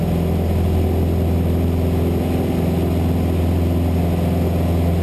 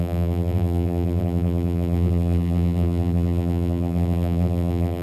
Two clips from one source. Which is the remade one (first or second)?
second